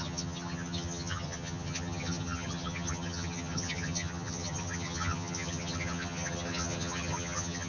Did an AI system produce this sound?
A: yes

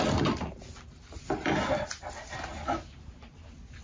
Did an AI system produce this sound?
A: no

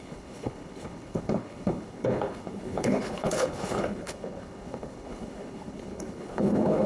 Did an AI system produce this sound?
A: yes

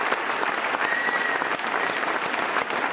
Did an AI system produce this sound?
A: no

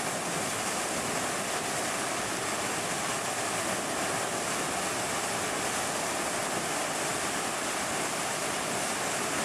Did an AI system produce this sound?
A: no